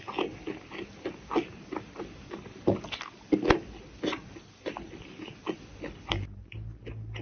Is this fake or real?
real